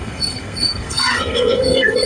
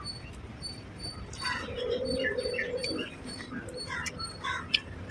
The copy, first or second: first